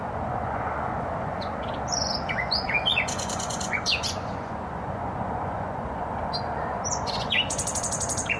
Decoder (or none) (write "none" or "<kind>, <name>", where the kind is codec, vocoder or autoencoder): vocoder, Vocos